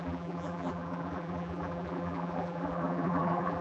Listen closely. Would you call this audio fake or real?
fake